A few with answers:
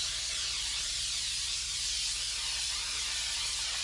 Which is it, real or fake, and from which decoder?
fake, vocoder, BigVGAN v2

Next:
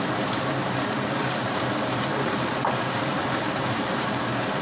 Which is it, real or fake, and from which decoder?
fake, vocoder, BigVGAN v2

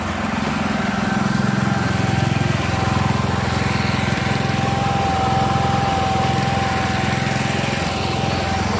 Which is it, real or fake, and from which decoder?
real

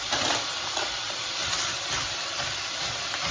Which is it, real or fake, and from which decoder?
fake, vocoder, BigVGAN v2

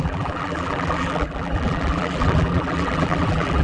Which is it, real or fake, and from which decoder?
fake, vocoder, BigVGAN v2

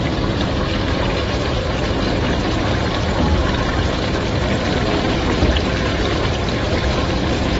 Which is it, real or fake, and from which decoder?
fake, vocoder, BigVGAN v2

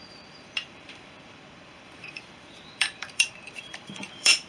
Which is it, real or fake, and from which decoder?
fake, vocoder, BigVGAN v2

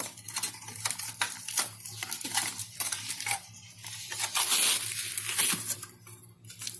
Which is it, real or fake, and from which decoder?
real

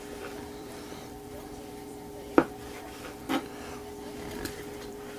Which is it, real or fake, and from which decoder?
fake, vocoder, BigVGAN v2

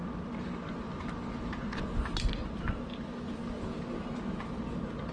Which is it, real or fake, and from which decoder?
real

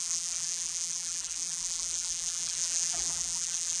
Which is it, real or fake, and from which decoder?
fake, vocoder, BigVGAN v2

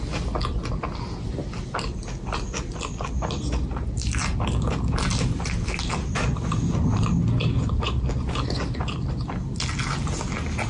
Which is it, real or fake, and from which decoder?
real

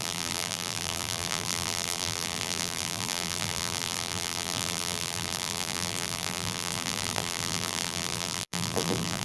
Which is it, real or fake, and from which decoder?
fake, vocoder, BigVGAN v2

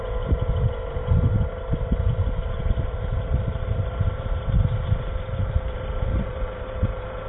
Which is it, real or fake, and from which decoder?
fake, vocoder, BigVGAN v2